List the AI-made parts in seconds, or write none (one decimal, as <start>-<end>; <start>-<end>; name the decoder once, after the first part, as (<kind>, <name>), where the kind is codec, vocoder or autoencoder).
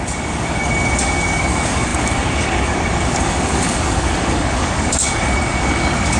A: 0.0-6.2 (codec, DAC)